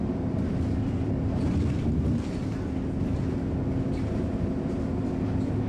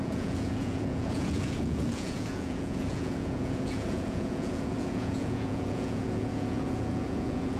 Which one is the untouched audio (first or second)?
first